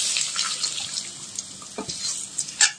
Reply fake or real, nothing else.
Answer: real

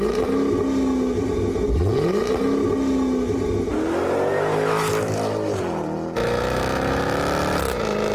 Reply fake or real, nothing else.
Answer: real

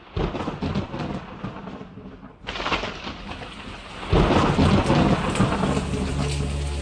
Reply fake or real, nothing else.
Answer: real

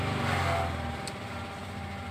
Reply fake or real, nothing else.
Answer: real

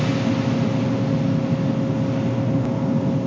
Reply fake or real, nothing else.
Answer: real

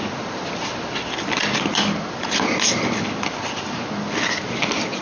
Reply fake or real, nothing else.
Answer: real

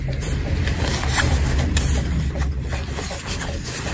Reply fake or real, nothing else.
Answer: real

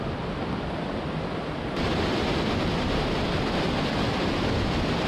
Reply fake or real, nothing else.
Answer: real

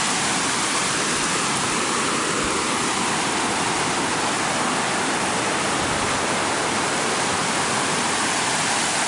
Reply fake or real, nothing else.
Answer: fake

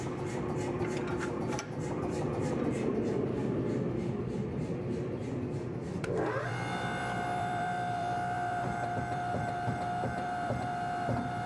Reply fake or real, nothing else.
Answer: fake